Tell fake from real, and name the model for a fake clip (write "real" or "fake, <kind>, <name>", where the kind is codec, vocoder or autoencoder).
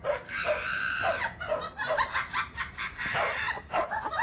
fake, vocoder, BigVGAN v2